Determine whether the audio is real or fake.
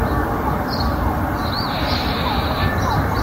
fake